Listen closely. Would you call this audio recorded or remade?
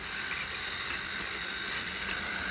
recorded